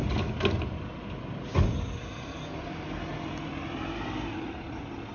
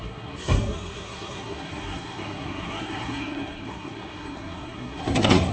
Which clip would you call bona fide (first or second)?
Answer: first